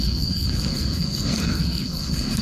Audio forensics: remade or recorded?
remade